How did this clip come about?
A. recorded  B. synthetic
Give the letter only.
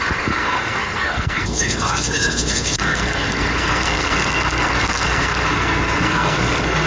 B